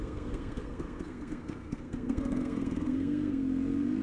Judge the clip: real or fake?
fake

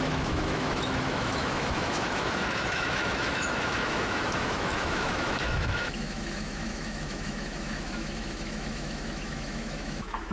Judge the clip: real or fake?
fake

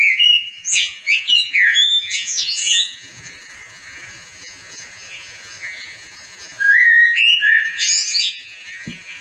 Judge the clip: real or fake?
fake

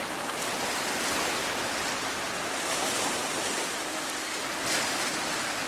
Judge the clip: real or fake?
real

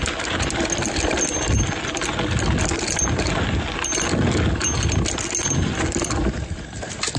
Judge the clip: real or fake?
real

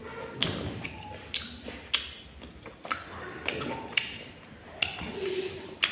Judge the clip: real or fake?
real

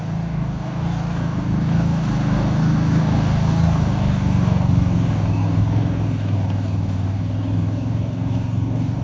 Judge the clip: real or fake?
fake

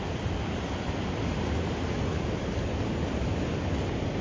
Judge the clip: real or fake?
real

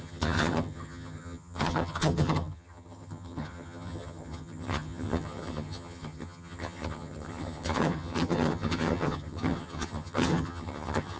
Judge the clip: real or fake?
fake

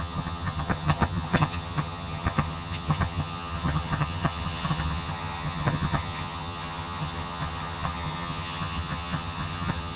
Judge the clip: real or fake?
fake